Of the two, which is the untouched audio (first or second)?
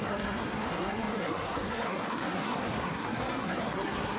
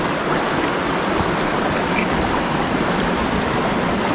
second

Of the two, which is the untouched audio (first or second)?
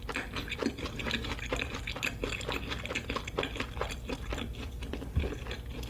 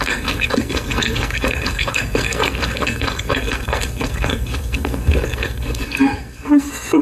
first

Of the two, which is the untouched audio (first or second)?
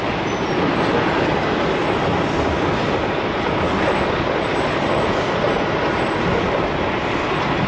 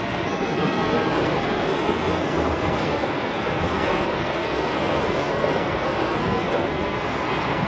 first